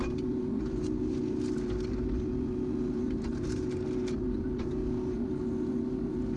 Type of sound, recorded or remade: recorded